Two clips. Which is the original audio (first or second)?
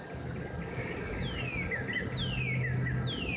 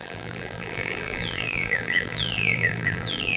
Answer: first